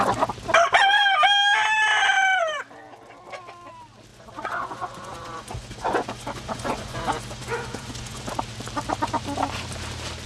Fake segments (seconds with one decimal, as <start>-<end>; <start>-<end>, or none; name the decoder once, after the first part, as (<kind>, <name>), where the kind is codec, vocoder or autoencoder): 4.1-8.2 (vocoder, Vocos)